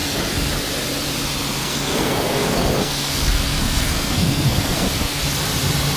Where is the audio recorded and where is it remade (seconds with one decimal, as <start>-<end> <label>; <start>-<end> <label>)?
0.0-0.5 remade; 0.5-1.6 recorded; 1.6-5.2 remade; 5.2-6.0 recorded